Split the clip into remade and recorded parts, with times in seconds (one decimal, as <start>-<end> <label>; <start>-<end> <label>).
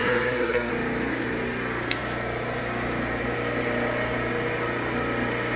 0.0-0.7 remade; 0.7-5.6 recorded